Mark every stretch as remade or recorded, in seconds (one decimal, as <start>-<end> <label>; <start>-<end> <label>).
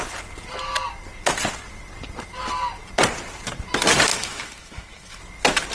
0.0-4.1 recorded; 4.1-5.2 remade; 5.2-5.7 recorded